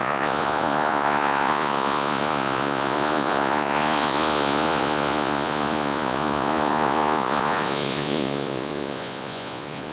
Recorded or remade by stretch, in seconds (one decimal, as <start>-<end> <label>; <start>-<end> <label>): 0.0-9.9 remade